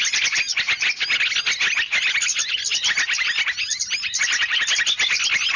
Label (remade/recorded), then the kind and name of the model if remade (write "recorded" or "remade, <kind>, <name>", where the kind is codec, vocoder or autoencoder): recorded